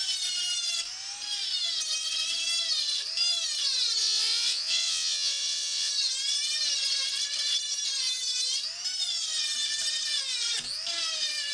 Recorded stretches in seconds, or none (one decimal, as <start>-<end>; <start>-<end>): 0.0-4.0; 5.9-11.5